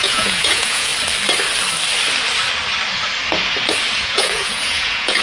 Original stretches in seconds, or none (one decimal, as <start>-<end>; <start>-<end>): 0.9-4.0